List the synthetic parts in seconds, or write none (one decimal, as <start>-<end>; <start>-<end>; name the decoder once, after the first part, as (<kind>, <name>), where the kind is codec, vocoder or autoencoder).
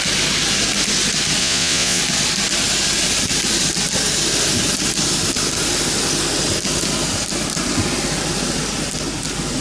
1.4-2.0 (vocoder, Vocos)